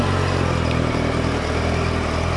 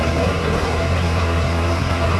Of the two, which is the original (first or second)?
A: first